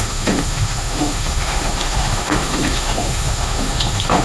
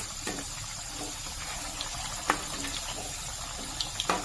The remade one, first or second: first